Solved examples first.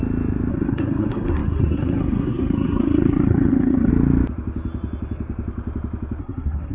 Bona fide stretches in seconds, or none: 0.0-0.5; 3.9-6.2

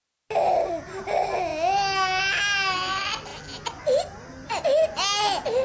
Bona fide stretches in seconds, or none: 0.0-5.6

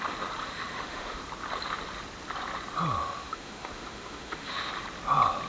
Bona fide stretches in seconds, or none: 0.0-0.4; 1.2-3.0; 4.7-5.5

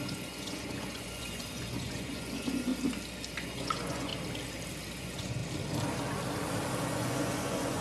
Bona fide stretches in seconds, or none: 2.7-3.4; 4.1-5.0; 5.4-6.8

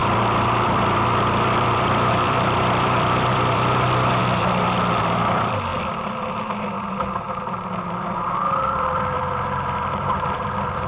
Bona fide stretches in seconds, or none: 4.2-5.0

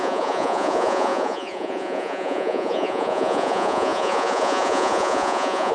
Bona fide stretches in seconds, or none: none